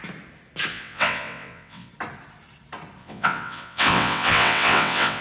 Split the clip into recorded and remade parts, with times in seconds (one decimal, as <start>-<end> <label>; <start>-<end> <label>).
0.0-0.7 recorded; 0.7-1.9 remade; 1.9-3.0 recorded; 3.0-5.2 remade